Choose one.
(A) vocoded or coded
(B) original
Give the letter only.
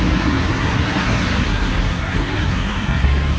A